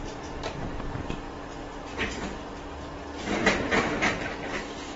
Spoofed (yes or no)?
no